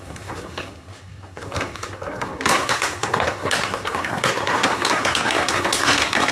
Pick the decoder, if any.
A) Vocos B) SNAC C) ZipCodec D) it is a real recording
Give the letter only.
B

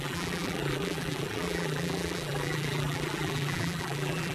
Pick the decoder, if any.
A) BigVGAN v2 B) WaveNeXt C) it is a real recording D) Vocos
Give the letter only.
A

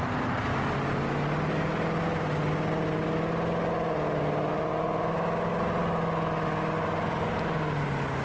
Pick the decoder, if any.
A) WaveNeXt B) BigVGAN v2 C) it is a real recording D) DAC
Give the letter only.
C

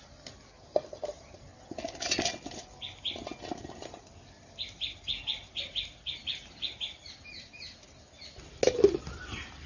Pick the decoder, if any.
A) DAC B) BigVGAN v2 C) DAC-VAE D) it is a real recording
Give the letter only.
D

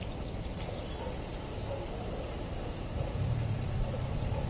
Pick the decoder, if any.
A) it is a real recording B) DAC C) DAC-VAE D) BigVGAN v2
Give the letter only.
A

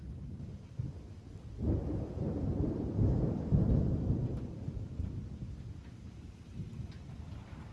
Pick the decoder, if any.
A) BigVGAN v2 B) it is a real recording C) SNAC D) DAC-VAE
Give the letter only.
A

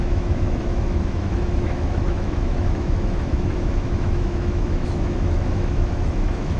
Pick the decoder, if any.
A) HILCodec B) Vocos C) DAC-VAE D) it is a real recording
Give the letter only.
C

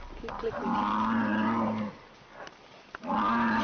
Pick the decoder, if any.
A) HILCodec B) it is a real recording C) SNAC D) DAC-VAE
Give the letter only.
B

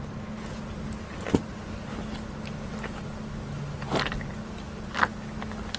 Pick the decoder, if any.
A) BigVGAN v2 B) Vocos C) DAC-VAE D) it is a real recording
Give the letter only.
D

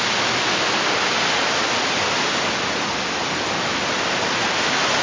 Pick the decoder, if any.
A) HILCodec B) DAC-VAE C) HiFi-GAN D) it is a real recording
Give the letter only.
D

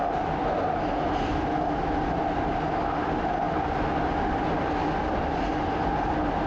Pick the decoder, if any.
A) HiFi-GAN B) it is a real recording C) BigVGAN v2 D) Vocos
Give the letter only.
B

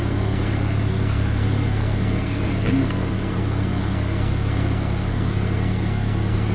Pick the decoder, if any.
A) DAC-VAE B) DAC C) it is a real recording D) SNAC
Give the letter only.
D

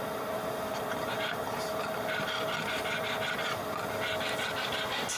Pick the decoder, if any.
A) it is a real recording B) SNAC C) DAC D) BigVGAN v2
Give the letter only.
A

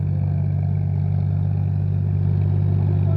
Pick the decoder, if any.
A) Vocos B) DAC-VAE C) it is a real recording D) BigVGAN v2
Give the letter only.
C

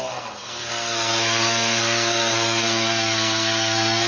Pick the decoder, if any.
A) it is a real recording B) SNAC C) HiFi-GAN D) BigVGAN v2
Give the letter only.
B